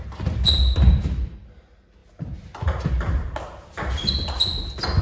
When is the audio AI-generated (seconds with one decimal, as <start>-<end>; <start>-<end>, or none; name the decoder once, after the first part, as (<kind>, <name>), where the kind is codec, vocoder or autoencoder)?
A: none